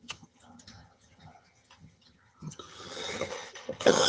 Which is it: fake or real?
fake